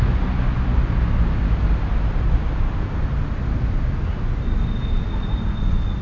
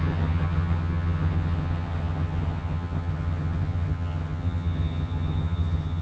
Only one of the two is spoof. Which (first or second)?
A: second